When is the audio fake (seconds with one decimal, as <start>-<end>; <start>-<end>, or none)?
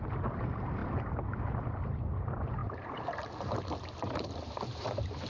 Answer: 0.0-0.8; 1.9-5.3